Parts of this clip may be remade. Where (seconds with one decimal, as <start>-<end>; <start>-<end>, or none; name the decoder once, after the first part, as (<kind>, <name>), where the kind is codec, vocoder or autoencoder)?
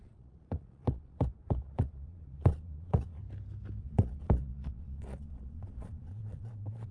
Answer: 0.0-3.2 (vocoder, Vocos); 3.8-6.9